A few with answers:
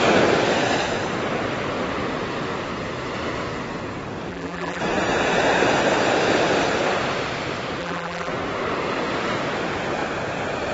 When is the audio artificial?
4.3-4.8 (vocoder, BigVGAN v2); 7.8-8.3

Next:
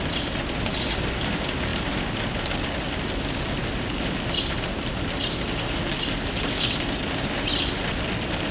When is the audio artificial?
none

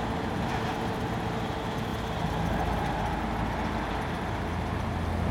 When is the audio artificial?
none

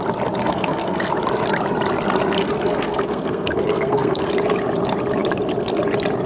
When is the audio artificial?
0.4-1.1 (codec, SNAC); 2.4-4.3

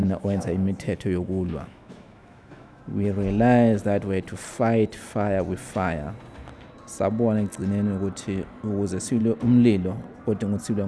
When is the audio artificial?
0.0-2.8 (autoencoder, DAC-VAE)

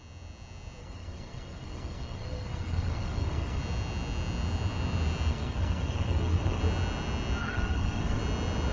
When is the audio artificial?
0.8-3.6 (codec, SNAC); 5.3-6.6; 7.4-8.2

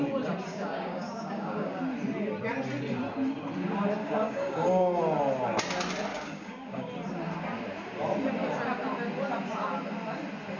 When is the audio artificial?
0.5-1.8 (codec, DAC); 4.0-5.0; 6.1-6.9